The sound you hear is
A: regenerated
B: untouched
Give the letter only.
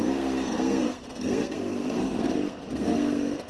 A